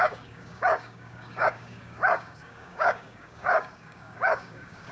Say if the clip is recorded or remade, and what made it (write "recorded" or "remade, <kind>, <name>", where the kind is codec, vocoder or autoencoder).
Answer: remade, codec, DAC